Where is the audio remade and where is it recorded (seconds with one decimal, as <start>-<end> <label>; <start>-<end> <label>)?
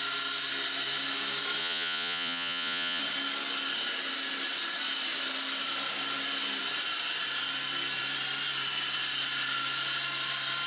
0.0-1.6 recorded; 1.6-3.0 remade; 3.0-10.7 recorded